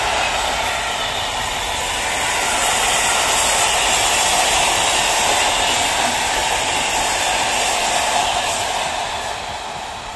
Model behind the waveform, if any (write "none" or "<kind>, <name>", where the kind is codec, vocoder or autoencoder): none